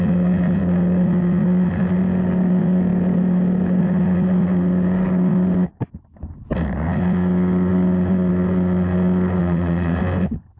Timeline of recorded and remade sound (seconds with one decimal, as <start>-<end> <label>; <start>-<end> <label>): 0.0-9.4 recorded; 9.4-10.0 remade; 10.0-10.6 recorded